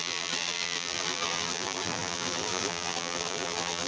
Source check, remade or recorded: remade